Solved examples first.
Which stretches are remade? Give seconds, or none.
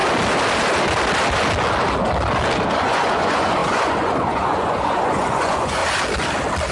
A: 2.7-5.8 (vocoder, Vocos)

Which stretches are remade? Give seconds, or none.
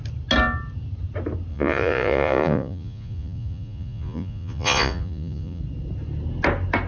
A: 1.5-5.6 (vocoder, Vocos)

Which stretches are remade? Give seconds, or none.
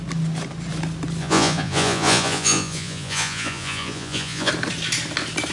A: 1.2-4.5 (vocoder, Vocos)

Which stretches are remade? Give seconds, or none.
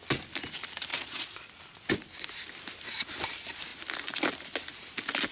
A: 0.9-1.5 (vocoder, Vocos)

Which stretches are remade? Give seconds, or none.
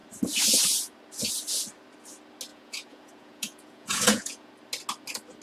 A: 2.5-4.5 (vocoder, Vocos)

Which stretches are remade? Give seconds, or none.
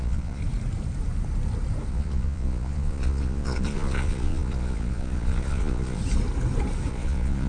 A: 0.0-0.4 (vocoder, Vocos); 1.9-6.0; 6.9-7.5